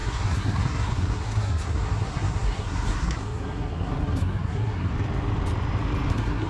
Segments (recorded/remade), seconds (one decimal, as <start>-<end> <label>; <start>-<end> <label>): 0.0-4.9 remade; 4.9-6.1 recorded; 6.1-6.5 remade